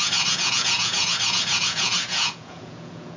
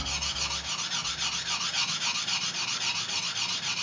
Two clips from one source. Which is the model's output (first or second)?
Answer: first